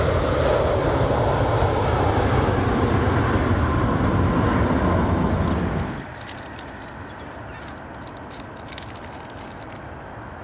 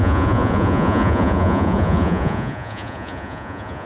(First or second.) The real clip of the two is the first